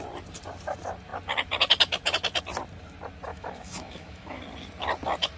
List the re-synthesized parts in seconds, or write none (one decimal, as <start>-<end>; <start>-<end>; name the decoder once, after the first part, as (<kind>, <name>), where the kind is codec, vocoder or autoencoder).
3.3-4.4 (autoencoder, DAC-VAE)